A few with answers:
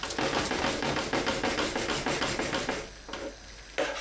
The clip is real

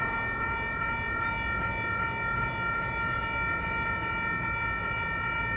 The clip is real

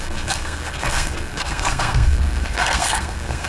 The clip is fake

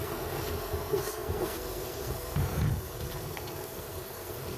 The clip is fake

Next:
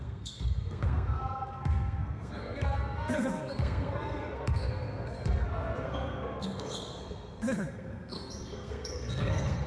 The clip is fake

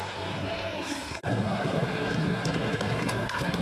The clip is fake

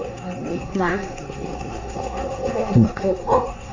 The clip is fake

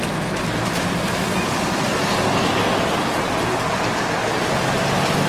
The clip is real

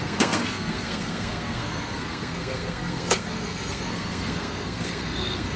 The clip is fake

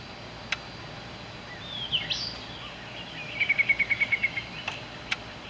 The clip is real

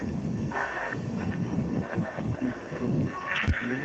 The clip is fake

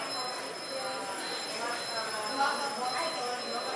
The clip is real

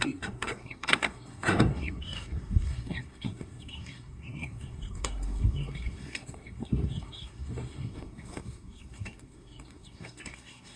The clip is fake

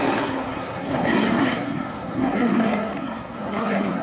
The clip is fake